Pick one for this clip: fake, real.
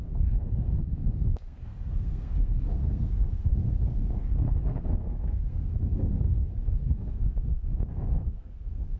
fake